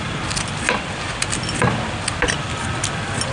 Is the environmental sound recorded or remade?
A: recorded